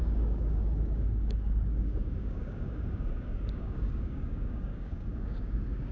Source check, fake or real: fake